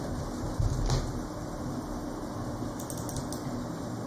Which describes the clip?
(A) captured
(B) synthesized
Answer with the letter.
A